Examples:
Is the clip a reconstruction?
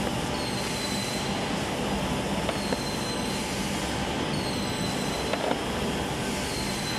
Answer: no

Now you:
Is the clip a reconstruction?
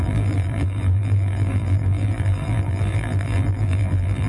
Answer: yes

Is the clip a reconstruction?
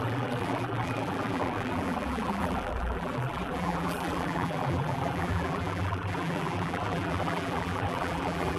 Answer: yes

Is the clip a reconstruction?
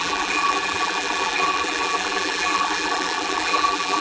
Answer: yes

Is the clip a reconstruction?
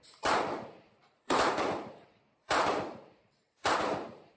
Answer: yes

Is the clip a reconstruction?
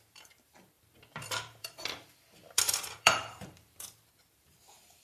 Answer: yes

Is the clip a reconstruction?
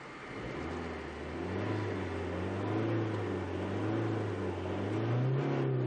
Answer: no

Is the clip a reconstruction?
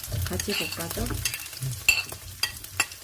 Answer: no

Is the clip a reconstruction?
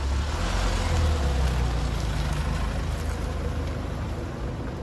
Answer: no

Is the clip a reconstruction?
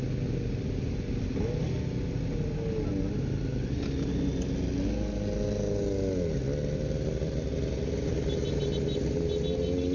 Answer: no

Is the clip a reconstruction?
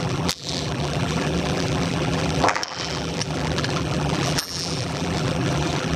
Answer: yes